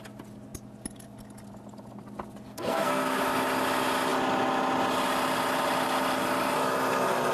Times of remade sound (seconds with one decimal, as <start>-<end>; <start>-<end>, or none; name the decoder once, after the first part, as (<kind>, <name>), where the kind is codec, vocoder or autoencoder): 2.5-3.2 (codec, SNAC)